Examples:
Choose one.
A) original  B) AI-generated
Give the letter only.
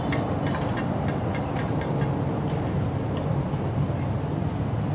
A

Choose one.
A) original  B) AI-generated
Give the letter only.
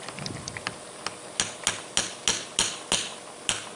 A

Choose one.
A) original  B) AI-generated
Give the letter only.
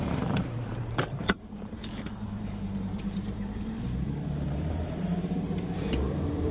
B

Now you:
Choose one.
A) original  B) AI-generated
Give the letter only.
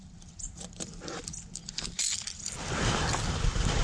B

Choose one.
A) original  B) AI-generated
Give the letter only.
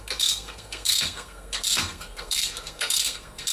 B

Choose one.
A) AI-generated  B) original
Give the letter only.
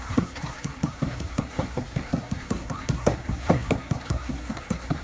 A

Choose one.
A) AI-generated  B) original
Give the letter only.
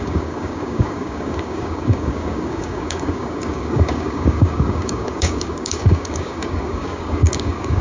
A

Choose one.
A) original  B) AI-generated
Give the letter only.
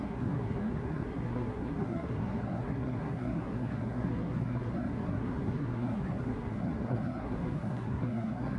B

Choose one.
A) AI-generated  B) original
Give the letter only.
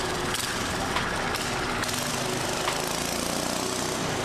B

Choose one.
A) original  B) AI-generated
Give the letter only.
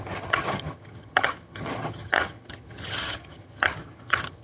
B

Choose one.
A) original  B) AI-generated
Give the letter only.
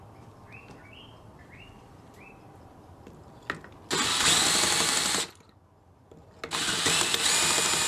A